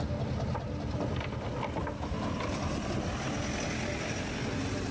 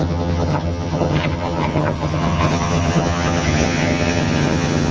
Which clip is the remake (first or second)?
second